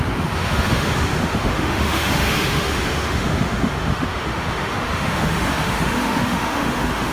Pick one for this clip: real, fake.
fake